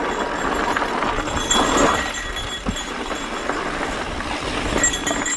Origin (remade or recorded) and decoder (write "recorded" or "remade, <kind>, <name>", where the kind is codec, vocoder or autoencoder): recorded